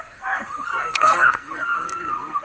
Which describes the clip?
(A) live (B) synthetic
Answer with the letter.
B